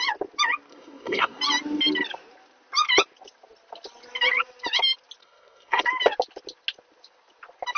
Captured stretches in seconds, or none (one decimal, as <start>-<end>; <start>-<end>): 0.0-0.7; 1.4-5.2; 5.8-7.8